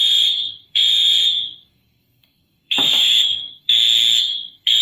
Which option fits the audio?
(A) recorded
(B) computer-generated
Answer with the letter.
B